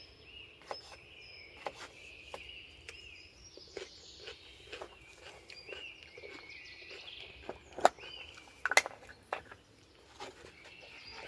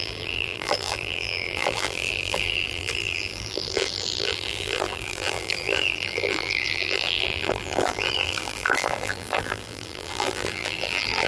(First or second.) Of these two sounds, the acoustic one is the first